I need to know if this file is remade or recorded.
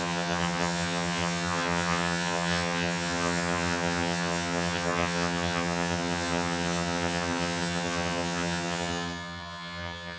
remade